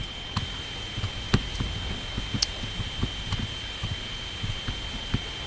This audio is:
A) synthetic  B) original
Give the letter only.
B